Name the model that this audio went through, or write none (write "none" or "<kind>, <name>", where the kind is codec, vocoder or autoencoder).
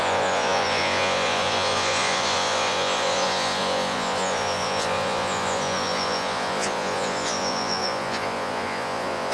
vocoder, Vocos